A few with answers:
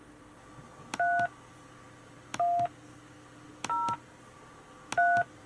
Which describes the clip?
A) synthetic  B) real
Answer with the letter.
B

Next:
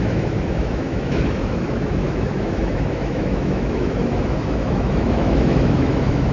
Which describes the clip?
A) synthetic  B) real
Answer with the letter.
A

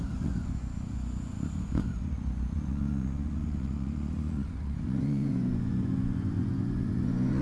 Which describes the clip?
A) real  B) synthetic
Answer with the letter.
B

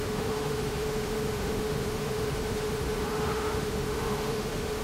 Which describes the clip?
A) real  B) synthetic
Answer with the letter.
B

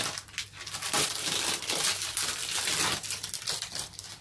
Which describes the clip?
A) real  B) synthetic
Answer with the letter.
B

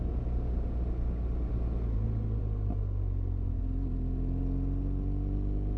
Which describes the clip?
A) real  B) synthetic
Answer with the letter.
A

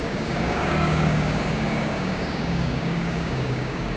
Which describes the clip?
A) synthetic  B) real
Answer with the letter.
A